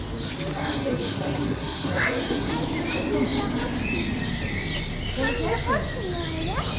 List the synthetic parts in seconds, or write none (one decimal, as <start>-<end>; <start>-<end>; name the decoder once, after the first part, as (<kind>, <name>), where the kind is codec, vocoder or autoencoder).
0.5-2.5 (codec, SNAC)